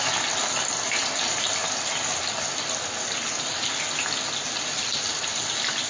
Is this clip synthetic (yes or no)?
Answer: no